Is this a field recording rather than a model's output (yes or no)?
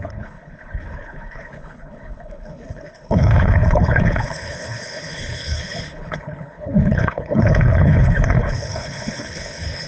no